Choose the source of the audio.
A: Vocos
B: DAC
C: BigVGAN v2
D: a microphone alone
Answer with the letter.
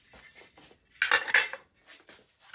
D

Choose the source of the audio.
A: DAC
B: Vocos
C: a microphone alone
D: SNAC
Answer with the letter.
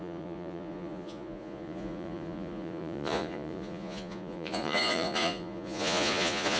B